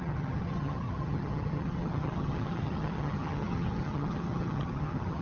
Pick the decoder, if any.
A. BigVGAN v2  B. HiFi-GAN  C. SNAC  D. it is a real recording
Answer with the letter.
B